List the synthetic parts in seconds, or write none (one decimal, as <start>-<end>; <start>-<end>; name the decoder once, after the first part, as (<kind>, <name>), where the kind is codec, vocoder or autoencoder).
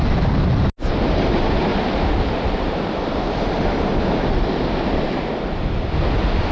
none